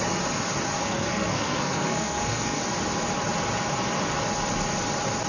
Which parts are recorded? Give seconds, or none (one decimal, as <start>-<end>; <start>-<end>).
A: 0.0-0.8; 2.6-5.3